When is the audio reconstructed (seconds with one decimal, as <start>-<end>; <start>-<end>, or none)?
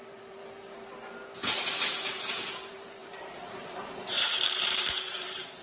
0.0-0.4; 1.9-5.6